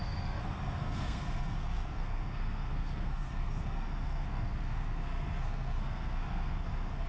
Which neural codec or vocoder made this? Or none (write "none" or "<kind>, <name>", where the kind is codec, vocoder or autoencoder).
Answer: codec, SNAC